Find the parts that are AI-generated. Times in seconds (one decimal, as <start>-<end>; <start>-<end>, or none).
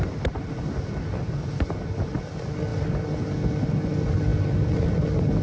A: none